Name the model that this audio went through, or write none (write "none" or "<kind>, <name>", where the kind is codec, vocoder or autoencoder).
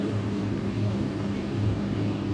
codec, DAC